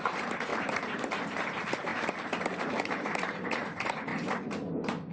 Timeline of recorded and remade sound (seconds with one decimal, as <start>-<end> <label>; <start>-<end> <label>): 0.0-4.1 remade; 4.1-5.1 recorded